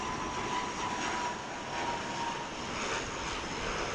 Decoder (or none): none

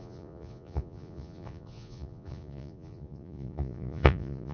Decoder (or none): vocoder, Vocos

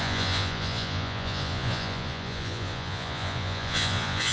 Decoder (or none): vocoder, Vocos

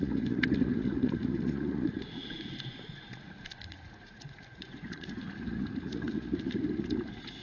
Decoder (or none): vocoder, Vocos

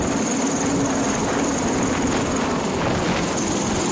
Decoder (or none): none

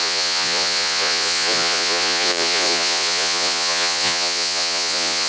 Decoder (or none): vocoder, Vocos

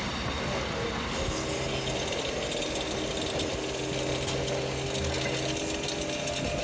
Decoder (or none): none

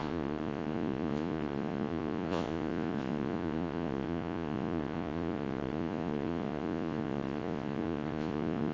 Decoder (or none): vocoder, Vocos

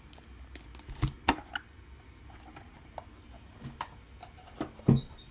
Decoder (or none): none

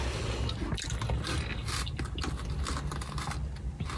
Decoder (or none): none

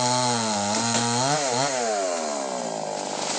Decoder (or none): none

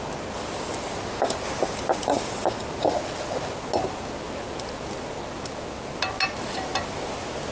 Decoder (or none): none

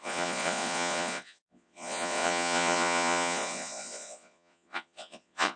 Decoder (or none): vocoder, Vocos